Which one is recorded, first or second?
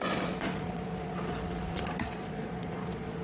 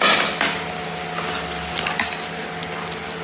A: second